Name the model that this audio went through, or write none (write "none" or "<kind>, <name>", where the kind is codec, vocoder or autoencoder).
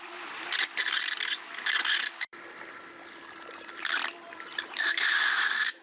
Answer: vocoder, BigVGAN v2